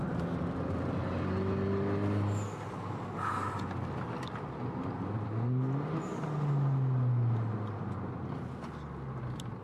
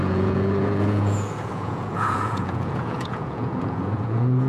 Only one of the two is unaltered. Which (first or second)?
first